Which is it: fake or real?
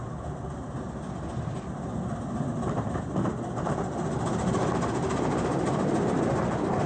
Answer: real